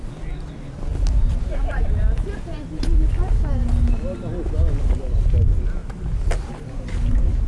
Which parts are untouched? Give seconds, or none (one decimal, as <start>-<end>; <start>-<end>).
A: 0.0-5.8; 6.5-7.5